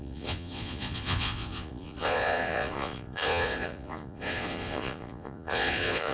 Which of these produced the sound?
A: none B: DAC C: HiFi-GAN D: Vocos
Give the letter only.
D